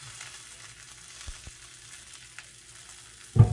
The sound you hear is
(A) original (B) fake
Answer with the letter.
A